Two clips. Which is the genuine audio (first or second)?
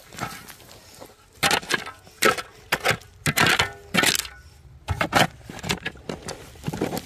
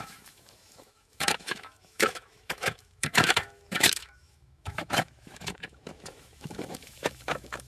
first